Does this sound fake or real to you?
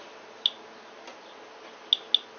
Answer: real